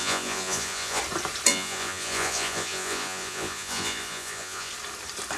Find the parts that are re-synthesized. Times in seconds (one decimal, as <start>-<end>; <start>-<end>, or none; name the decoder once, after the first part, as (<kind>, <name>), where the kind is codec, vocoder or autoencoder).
0.0-1.0 (vocoder, Vocos); 1.5-4.7